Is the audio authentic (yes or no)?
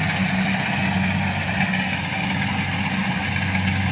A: yes